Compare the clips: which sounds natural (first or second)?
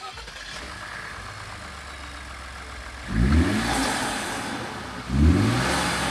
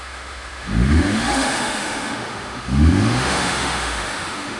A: first